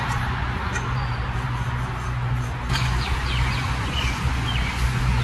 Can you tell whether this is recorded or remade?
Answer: remade